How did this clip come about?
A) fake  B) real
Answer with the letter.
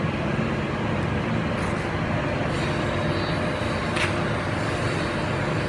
B